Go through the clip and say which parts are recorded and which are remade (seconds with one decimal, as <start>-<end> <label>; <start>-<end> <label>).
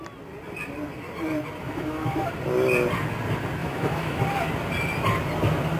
0.0-1.6 recorded; 1.6-2.3 remade; 2.3-3.6 recorded; 3.6-4.2 remade; 4.2-5.8 recorded